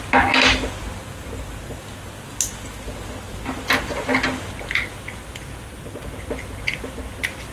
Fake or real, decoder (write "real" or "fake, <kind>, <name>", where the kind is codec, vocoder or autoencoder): real